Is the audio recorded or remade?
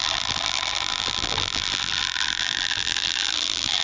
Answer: remade